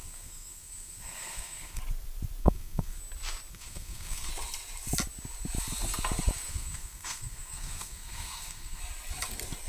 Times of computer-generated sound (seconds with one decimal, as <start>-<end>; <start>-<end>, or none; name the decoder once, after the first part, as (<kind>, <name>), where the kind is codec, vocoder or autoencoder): 0.0-1.8 (codec, SNAC); 2.4-3.0; 3.5-4.3; 6.5-8.8

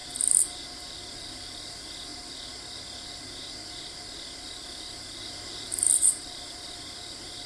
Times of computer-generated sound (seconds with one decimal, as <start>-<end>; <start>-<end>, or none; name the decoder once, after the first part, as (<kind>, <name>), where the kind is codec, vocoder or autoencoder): 1.1-2.1 (vocoder, BigVGAN v2); 4.4-5.2; 5.9-7.5